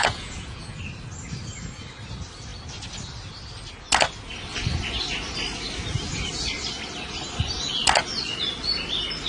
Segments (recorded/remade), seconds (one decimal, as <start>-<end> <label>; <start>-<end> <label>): 0.0-0.8 remade; 0.8-9.3 recorded